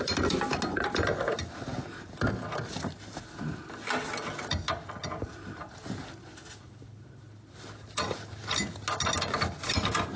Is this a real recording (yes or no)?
yes